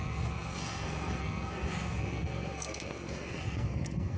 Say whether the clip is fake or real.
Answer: fake